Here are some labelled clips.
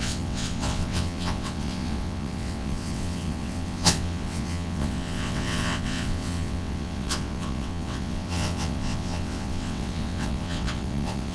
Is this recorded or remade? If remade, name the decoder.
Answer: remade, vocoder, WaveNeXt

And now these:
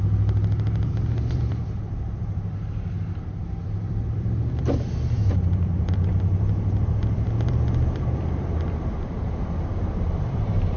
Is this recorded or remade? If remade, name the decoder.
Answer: remade, vocoder, BigVGAN v2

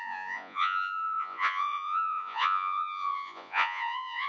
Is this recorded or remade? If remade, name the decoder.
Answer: remade, vocoder, Vocos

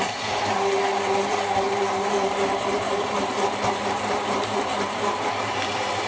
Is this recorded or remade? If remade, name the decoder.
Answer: remade, vocoder, BigVGAN v2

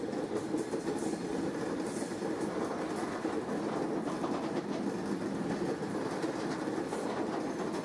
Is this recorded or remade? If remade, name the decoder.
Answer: recorded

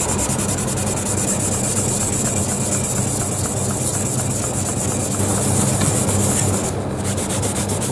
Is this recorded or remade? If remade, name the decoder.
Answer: recorded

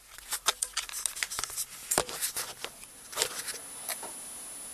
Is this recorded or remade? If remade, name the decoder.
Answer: recorded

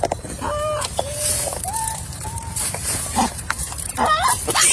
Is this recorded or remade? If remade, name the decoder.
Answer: remade, vocoder, BigVGAN v2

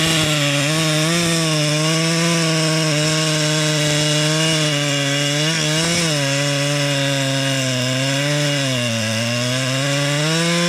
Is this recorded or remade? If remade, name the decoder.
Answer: recorded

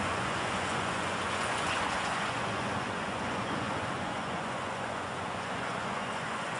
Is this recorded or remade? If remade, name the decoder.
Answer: remade, vocoder, Vocos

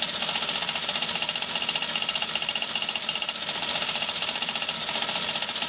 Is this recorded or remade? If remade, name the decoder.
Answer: recorded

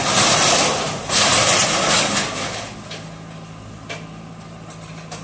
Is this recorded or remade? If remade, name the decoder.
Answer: recorded